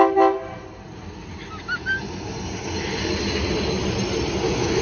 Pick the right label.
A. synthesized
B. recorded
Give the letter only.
B